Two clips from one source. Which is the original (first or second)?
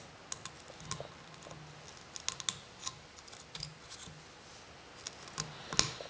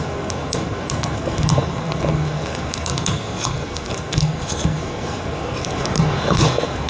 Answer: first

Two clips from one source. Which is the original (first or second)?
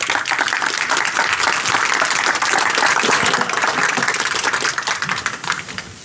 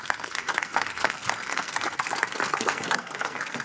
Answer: first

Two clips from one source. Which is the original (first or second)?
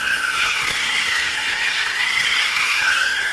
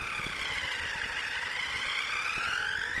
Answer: second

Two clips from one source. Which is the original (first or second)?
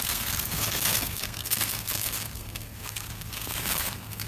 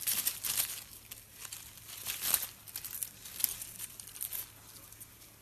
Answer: second